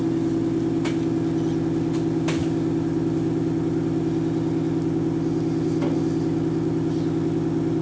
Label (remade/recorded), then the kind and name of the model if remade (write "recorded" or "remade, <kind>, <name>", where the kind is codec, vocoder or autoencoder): recorded